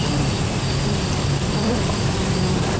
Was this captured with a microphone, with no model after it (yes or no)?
yes